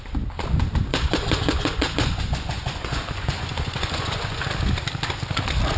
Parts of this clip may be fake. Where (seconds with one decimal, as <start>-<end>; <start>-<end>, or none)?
0.9-4.4